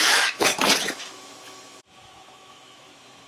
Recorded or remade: remade